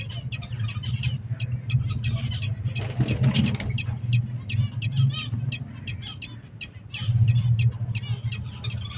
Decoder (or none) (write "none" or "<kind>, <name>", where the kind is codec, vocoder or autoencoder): none